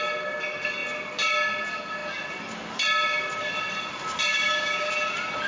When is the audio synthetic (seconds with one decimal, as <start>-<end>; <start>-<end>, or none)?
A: 4.3-4.9